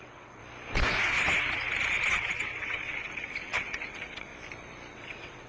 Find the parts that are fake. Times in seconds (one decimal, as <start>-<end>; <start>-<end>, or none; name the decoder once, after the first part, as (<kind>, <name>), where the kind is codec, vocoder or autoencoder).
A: 0.0-0.4 (vocoder, WaveNeXt); 2.2-4.3; 4.9-5.5